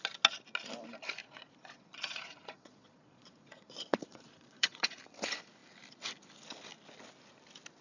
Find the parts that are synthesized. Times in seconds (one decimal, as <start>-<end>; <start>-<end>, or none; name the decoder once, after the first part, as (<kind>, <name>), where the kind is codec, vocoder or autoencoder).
1.2-5.0 (vocoder, Vocos)